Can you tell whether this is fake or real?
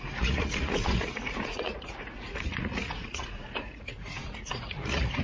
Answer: fake